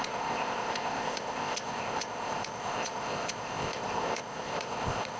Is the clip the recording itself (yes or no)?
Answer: no